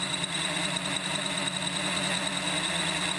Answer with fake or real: real